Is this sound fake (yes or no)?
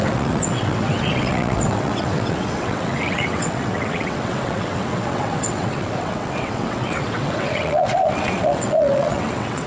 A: yes